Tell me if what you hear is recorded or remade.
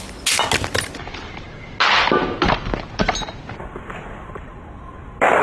recorded